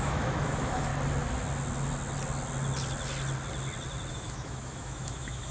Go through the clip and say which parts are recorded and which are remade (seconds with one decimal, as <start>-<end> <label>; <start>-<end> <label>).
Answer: 0.0-0.9 remade; 0.9-4.1 recorded; 4.1-5.5 remade